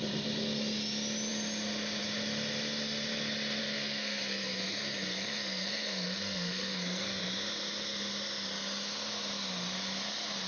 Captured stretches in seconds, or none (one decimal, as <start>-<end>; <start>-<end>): 0.0-3.6; 7.2-10.5